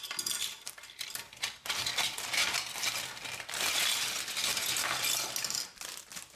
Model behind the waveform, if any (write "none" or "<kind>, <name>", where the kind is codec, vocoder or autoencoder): none